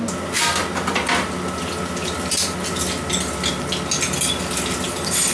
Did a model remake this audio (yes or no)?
no